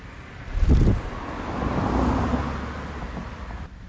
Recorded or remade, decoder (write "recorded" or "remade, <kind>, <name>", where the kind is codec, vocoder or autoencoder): recorded